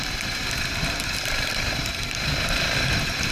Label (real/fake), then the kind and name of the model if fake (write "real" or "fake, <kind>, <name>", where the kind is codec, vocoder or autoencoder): real